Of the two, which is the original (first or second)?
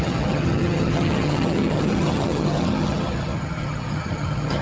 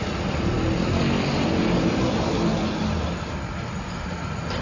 second